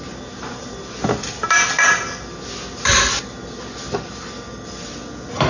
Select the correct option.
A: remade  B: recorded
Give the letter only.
B